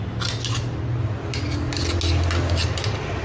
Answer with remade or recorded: recorded